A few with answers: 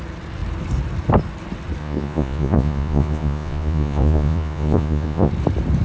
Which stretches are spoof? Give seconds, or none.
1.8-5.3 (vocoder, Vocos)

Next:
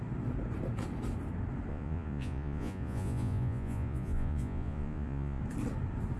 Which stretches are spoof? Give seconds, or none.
1.7-5.4 (vocoder, Vocos)

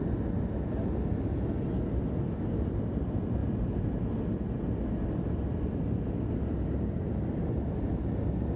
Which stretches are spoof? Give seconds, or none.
none

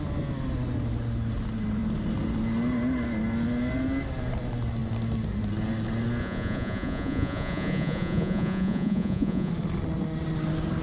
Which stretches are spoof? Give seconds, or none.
6.2-9.5 (vocoder, Vocos)

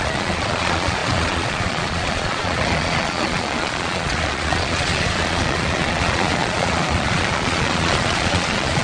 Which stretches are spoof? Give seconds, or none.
0.0-8.8 (vocoder, Vocos)

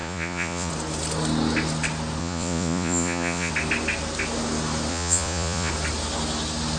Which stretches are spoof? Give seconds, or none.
0.0-0.7 (vocoder, Vocos); 2.2-3.5; 4.9-5.7